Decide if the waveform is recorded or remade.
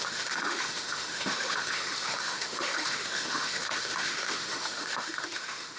remade